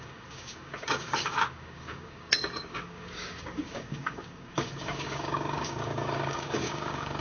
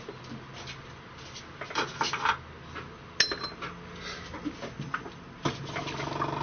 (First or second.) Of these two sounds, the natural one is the second